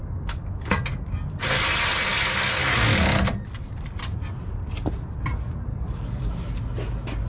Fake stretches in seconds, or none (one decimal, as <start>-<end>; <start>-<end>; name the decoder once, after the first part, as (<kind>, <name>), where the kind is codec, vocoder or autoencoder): 0.0-0.8 (codec, DAC); 5.7-6.3